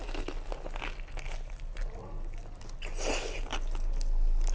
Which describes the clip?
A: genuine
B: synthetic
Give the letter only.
A